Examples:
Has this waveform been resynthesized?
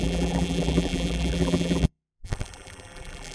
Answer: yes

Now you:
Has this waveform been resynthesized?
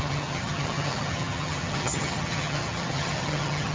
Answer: yes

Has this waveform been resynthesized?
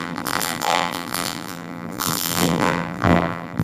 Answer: yes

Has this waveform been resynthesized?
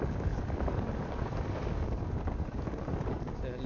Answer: yes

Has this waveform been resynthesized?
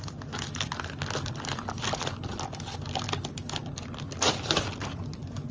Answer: no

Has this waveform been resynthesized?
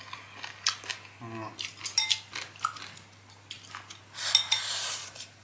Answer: no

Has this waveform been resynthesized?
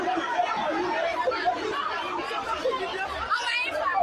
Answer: no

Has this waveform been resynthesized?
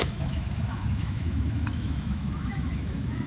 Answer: yes